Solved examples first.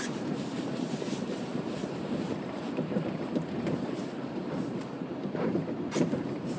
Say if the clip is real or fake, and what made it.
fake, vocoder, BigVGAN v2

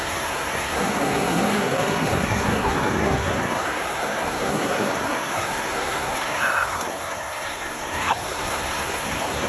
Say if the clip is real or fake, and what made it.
fake, codec, SNAC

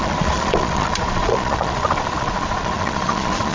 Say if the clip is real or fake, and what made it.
fake, vocoder, Vocos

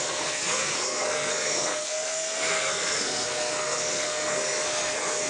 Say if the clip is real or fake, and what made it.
fake, codec, SNAC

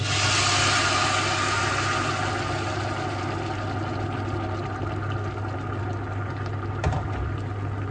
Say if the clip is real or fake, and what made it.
real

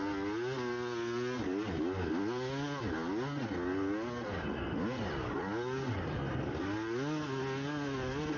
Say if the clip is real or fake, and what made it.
real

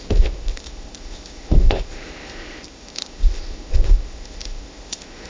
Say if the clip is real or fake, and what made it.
fake, codec, ZipCodec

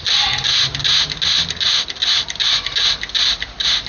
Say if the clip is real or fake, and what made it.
real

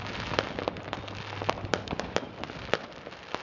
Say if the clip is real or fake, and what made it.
real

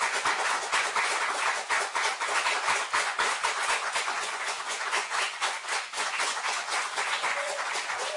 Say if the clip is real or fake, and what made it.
fake, vocoder, Vocos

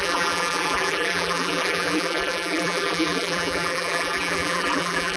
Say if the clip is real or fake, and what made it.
fake, vocoder, BigVGAN v2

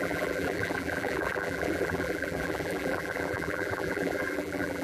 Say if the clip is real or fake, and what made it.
fake, vocoder, BigVGAN v2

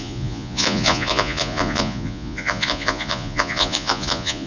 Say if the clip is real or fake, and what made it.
fake, vocoder, Vocos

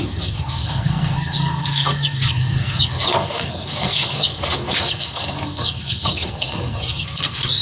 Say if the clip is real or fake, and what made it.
fake, codec, SNAC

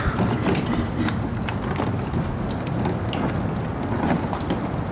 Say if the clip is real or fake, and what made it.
real